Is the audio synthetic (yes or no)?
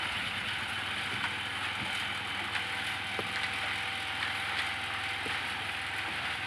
no